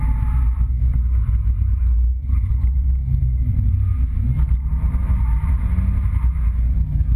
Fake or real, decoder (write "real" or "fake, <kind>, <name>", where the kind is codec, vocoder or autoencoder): real